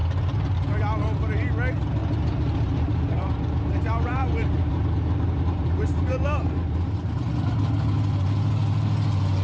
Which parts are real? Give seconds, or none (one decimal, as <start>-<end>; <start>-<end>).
0.0-2.0; 7.1-9.4